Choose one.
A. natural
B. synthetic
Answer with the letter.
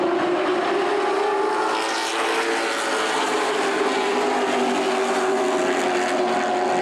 A